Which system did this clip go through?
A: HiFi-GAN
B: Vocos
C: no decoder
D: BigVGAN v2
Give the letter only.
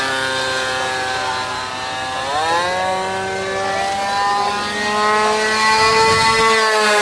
C